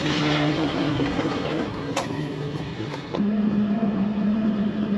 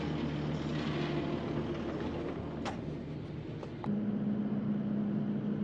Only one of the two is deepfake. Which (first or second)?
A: first